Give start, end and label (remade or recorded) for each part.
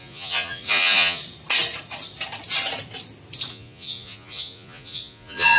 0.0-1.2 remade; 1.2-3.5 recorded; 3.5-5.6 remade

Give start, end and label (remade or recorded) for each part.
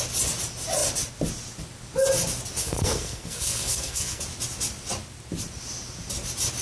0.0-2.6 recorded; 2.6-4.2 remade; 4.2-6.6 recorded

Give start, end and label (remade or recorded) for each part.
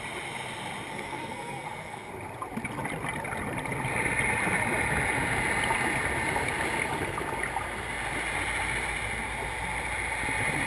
0.0-0.9 recorded; 0.9-2.1 remade; 2.1-10.7 recorded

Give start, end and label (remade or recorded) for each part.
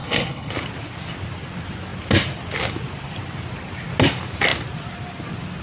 0.0-0.5 remade; 0.5-5.6 recorded